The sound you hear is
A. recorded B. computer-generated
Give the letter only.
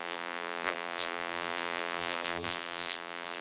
B